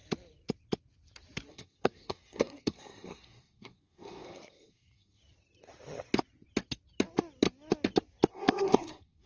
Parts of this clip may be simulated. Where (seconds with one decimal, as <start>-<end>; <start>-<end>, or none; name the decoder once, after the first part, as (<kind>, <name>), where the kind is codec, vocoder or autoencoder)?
1.5-5.2 (codec, SNAC); 8.3-9.3